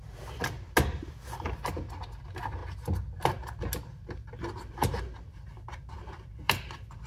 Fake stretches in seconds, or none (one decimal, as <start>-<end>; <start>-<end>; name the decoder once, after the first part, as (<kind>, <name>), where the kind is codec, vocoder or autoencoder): none